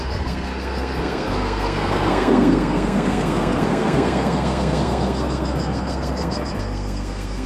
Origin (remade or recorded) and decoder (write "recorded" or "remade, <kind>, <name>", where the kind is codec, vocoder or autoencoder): remade, codec, SNAC